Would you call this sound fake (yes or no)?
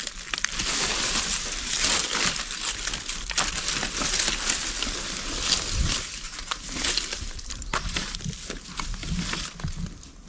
no